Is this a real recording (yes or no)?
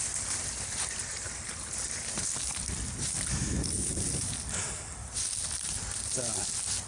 yes